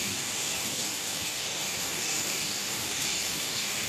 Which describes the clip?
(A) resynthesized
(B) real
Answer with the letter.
A